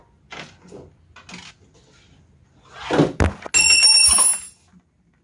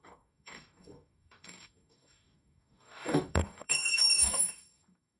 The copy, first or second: second